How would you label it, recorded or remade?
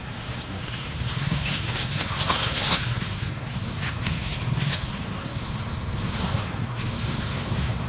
remade